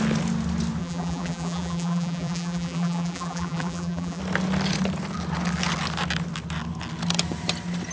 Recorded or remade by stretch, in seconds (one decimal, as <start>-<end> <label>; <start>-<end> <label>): 0.0-0.8 recorded; 0.8-4.2 remade; 4.2-7.9 recorded